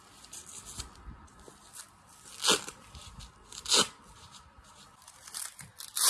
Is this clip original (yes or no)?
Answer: yes